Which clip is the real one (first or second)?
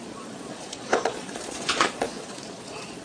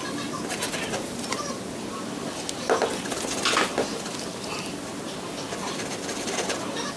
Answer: second